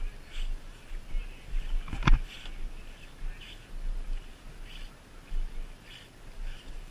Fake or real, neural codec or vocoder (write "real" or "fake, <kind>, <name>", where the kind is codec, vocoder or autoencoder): real